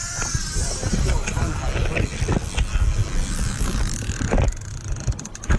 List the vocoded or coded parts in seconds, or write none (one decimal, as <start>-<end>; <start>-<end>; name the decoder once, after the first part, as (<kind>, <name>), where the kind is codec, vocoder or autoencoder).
none